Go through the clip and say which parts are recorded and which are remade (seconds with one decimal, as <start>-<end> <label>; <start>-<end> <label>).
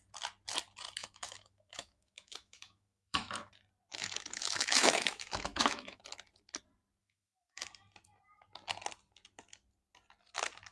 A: 0.0-1.0 recorded; 1.0-3.5 remade; 3.5-3.9 recorded; 3.9-6.0 remade; 6.0-7.0 recorded; 7.0-7.7 remade; 7.7-10.7 recorded